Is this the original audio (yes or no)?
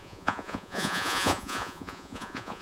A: no